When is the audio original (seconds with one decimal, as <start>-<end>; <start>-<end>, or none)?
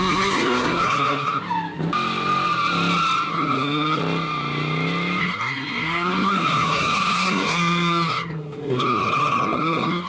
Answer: 1.4-3.3; 4.0-5.2